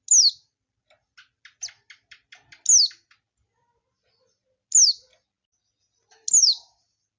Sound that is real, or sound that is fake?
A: real